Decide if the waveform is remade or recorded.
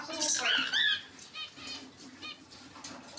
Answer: recorded